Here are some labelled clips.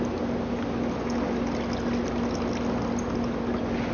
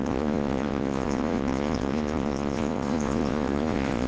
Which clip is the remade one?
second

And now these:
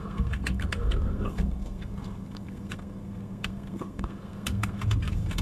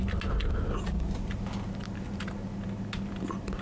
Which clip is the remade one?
first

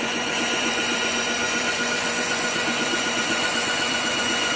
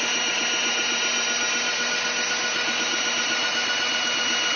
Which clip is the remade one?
first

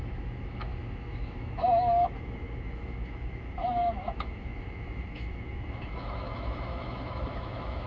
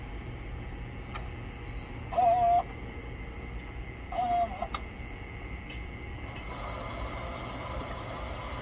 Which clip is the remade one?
first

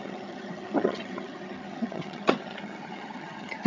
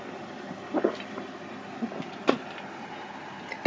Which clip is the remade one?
first